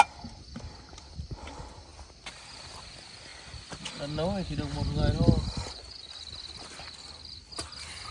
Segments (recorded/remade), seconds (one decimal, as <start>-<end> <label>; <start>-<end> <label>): 0.0-8.1 recorded